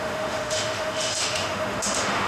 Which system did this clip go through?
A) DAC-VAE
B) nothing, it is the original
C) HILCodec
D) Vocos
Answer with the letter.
A